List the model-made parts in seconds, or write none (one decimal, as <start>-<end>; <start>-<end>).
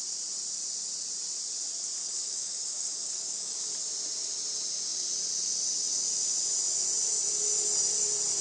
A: 2.0-3.7